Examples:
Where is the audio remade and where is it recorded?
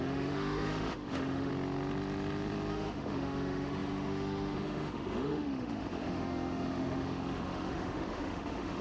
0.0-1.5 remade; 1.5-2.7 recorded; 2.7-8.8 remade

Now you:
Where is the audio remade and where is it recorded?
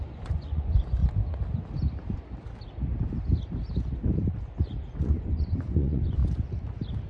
0.0-1.0 remade; 1.0-5.0 recorded; 5.0-6.2 remade; 6.2-7.1 recorded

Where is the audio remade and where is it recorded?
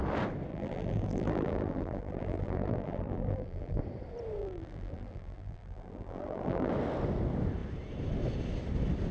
0.0-0.5 recorded; 0.5-3.8 remade; 3.8-4.4 recorded; 4.4-6.7 remade; 6.7-9.1 recorded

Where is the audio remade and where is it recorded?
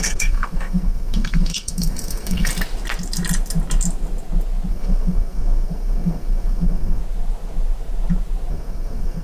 0.0-2.5 remade; 2.5-4.7 recorded; 4.7-7.0 remade; 7.0-8.5 recorded; 8.5-9.2 remade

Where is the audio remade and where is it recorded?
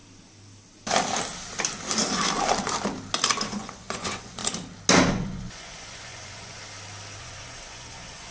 0.0-3.5 recorded; 3.5-4.4 remade; 4.4-5.1 recorded; 5.1-6.6 remade; 6.6-7.2 recorded; 7.2-8.3 remade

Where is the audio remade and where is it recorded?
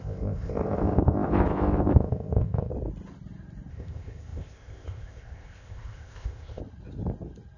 0.0-2.7 remade; 2.7-3.7 recorded; 3.7-6.6 remade; 6.6-7.6 recorded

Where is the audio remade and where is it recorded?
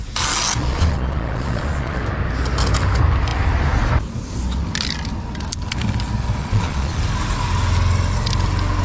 0.0-0.6 recorded; 0.6-2.0 remade; 2.0-6.4 recorded; 6.4-7.0 remade; 7.0-8.8 recorded